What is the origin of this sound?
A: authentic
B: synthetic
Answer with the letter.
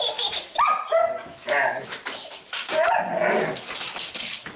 A